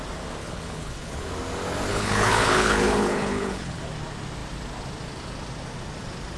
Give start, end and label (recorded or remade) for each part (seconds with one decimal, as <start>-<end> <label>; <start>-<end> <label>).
0.0-0.4 recorded; 0.4-1.3 remade; 1.3-1.9 recorded; 1.9-3.8 remade; 3.8-6.4 recorded